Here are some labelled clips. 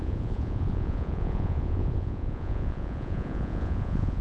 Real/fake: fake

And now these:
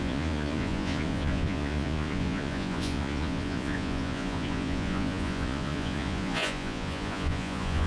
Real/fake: fake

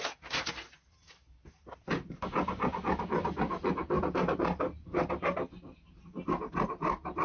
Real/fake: real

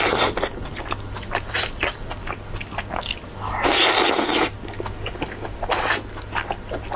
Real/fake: real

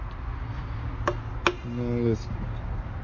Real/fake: real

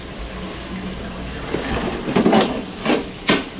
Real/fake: real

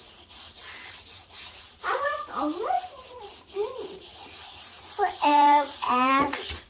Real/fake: fake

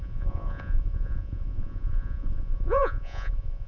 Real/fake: fake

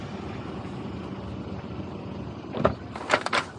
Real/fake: real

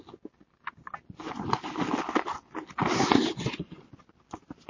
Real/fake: real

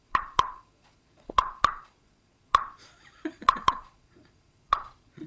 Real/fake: fake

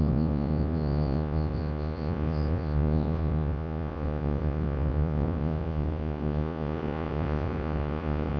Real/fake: fake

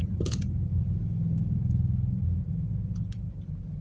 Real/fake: fake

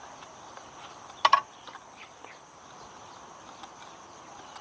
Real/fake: real